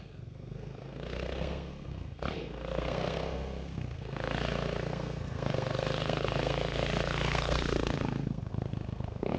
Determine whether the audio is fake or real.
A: fake